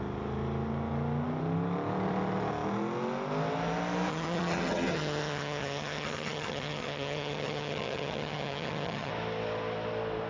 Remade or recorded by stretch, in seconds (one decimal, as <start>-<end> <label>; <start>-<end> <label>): 0.0-4.1 recorded; 4.1-9.1 remade; 9.1-10.3 recorded